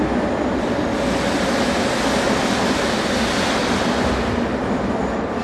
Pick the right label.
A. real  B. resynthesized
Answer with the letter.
A